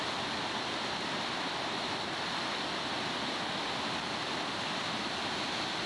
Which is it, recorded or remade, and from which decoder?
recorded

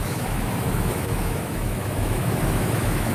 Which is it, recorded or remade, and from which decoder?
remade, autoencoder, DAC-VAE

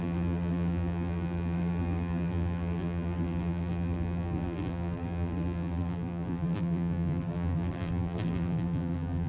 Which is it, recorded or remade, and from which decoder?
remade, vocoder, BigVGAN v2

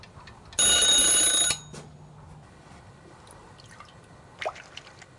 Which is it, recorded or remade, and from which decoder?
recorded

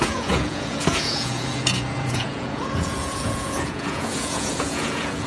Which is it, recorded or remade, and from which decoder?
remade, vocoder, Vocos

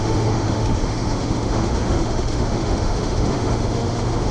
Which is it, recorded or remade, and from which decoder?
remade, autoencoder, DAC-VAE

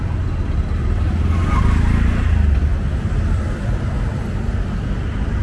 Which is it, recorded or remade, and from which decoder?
recorded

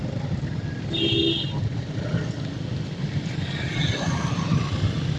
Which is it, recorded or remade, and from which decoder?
recorded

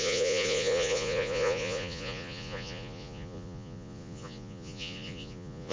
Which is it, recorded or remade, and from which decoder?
remade, vocoder, Vocos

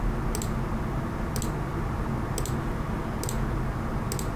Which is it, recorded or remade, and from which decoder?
recorded